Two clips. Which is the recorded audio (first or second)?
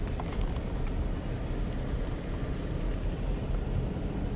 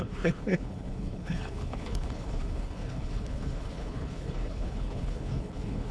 first